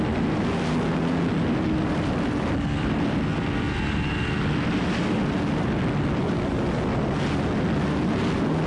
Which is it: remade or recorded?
recorded